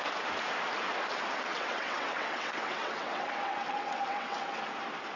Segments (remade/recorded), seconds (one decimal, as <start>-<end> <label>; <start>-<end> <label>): 0.0-1.5 recorded; 1.5-4.6 remade; 4.6-5.2 recorded